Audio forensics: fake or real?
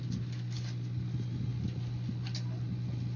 real